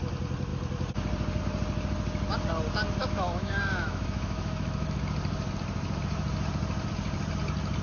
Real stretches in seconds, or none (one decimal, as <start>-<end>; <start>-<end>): 0.0-3.0; 5.0-7.8